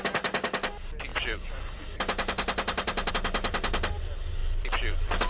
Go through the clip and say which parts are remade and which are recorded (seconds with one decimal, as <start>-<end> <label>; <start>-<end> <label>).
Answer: 0.0-4.4 recorded; 4.4-5.3 remade